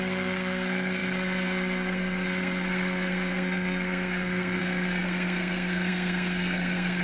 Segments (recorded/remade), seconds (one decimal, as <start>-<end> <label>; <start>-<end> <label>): 0.0-7.0 remade